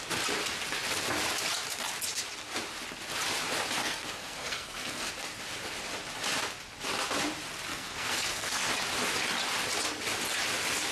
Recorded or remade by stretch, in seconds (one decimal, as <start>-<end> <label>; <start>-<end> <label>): 0.0-3.8 recorded; 3.8-5.1 remade; 5.1-7.7 recorded; 7.7-8.7 remade; 8.7-10.9 recorded